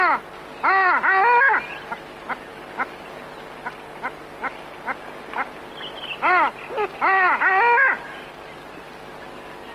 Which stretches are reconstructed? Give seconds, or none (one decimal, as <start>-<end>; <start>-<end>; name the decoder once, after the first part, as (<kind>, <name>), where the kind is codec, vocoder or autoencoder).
none